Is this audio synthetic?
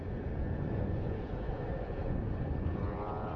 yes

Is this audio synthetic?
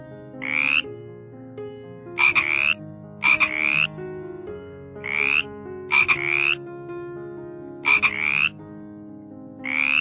no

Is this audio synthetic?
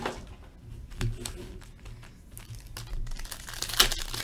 no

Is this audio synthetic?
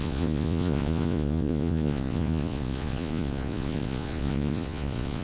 yes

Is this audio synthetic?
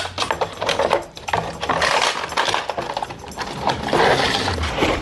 no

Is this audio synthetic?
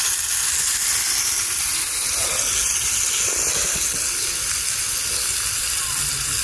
no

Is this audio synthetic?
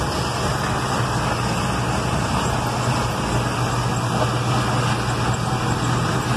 no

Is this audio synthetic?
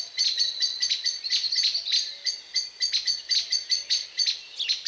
no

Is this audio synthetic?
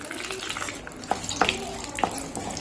no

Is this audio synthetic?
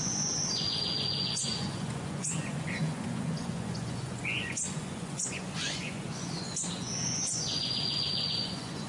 yes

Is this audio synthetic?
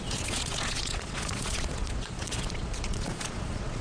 yes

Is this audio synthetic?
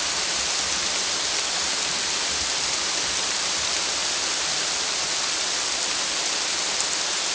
no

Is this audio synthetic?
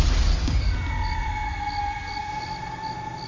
no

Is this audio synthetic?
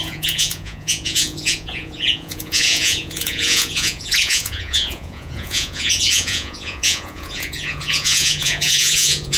yes